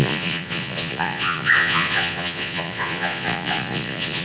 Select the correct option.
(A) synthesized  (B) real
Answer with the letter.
A